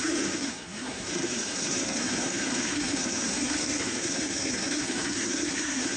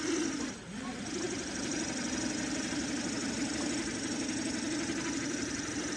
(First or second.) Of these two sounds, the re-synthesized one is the first